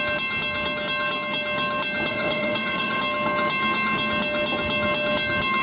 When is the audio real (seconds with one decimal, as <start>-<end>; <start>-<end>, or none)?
0.0-2.1; 3.0-5.6